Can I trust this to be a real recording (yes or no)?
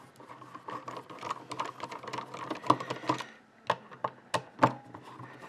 yes